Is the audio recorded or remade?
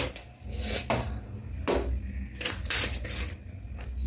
recorded